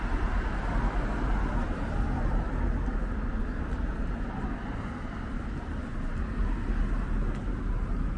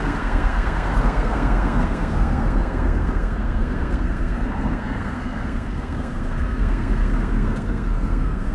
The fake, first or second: second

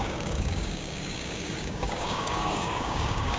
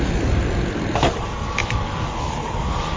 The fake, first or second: first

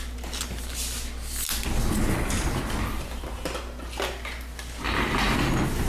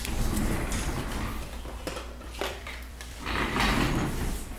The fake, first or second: second